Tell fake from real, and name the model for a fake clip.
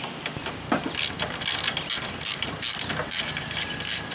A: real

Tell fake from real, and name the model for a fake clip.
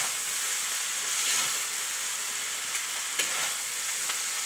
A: real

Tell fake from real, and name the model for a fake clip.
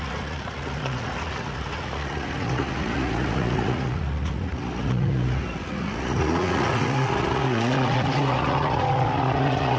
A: fake, vocoder, Vocos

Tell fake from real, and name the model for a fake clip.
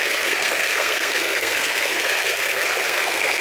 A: fake, codec, SNAC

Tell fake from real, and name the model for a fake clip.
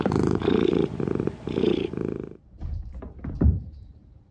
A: fake, vocoder, BigVGAN v2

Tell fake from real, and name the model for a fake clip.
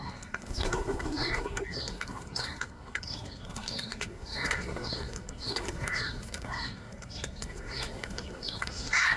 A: fake, codec, SNAC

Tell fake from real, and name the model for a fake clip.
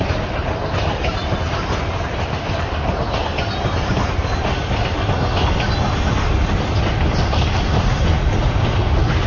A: real